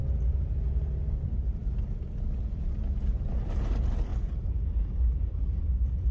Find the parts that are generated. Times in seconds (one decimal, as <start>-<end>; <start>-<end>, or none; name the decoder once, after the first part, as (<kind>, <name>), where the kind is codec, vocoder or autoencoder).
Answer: 0.8-1.6 (vocoder, BigVGAN v2); 2.5-6.1